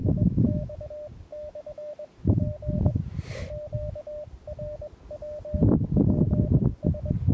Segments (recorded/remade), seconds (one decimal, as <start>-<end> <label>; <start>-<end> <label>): 0.0-0.9 remade; 0.9-1.3 recorded; 1.3-1.9 remade; 1.9-7.3 recorded